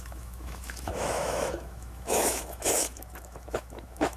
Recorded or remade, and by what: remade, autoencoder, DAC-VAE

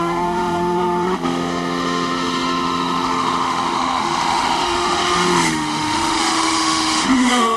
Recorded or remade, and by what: remade, autoencoder, DAC-VAE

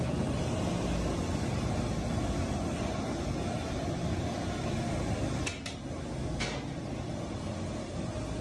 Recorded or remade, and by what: recorded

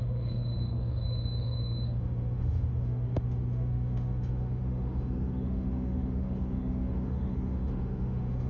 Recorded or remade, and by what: remade, autoencoder, DAC-VAE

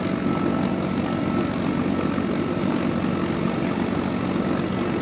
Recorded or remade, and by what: recorded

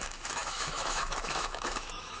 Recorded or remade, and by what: remade, autoencoder, DAC-VAE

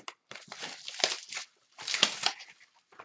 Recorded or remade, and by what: recorded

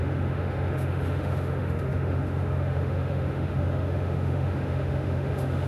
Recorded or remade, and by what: remade, autoencoder, DAC-VAE